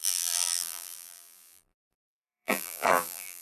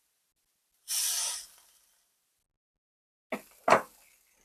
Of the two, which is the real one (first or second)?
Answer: second